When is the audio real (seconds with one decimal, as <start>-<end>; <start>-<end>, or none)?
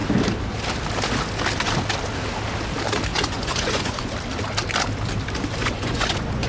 0.0-3.1; 4.1-5.6